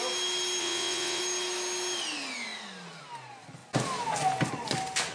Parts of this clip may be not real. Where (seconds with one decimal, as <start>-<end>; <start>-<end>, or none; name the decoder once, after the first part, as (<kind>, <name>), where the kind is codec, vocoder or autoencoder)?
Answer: 0.6-1.2 (vocoder, WaveNeXt)